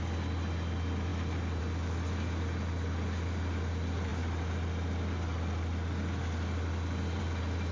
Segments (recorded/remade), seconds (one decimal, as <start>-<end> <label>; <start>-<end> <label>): 0.0-7.7 recorded